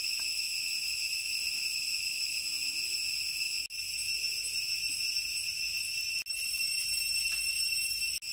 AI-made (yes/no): no